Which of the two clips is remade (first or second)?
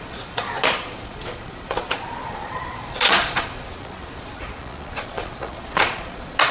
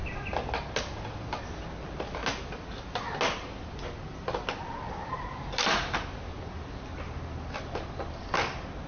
first